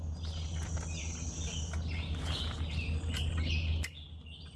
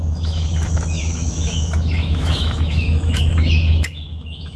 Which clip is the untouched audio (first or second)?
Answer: first